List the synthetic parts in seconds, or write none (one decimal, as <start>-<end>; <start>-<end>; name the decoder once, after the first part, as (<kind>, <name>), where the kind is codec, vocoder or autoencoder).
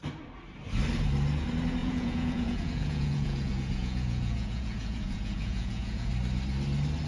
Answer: 1.8-6.1 (vocoder, Vocos)